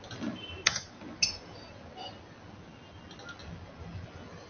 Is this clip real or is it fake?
real